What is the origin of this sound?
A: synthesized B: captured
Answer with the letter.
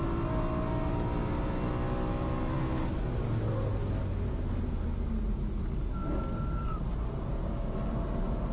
B